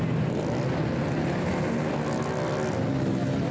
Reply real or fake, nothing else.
real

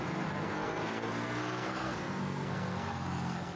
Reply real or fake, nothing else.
fake